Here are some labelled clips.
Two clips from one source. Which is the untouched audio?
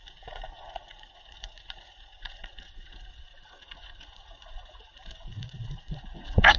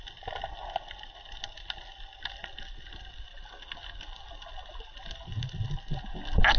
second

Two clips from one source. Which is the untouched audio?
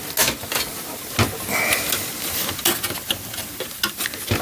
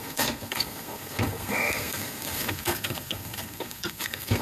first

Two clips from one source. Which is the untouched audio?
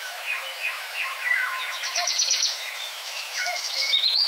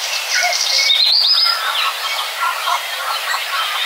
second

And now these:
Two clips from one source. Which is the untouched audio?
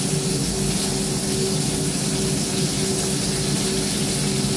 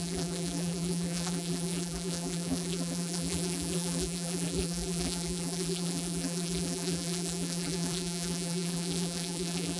first